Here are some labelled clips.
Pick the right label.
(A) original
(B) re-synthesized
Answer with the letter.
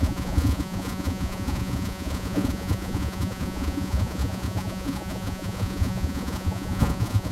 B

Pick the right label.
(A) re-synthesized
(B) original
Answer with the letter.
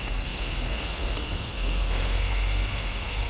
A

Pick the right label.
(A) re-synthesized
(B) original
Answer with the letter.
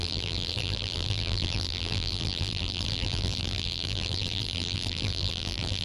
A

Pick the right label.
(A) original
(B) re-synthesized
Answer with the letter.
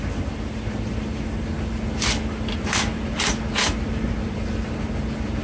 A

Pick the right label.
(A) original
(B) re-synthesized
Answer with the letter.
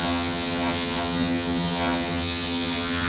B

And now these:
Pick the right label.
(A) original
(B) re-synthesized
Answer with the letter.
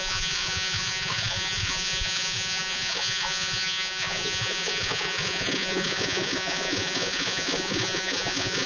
B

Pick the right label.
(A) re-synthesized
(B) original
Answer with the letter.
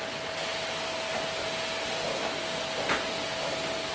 B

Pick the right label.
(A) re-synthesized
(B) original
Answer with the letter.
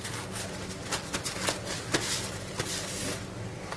B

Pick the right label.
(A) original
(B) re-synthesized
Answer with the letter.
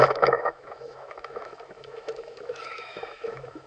B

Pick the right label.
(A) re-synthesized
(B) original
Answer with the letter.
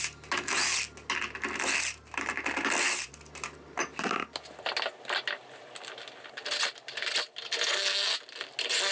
B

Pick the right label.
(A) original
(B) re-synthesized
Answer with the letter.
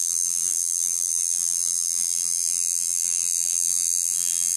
B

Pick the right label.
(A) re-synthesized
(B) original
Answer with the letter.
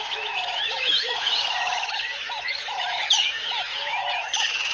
A